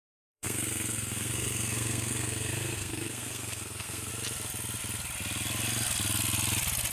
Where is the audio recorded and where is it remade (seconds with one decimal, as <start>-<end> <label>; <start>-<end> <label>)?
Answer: 0.0-4.1 remade; 4.1-6.9 recorded